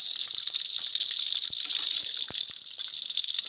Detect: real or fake real